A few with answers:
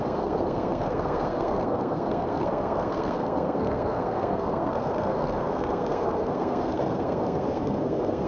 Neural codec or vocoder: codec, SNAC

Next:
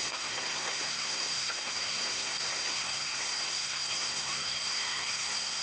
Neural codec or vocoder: codec, SNAC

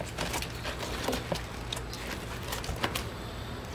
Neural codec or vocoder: none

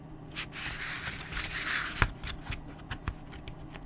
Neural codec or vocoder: none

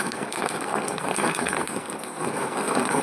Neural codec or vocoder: codec, SNAC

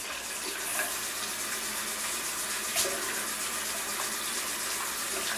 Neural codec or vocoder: none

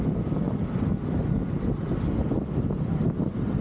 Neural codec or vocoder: none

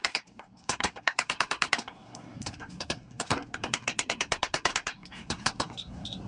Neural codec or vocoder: codec, SNAC